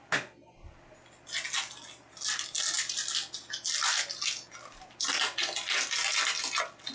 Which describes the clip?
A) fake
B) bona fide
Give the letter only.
B